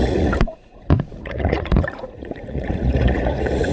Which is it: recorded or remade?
remade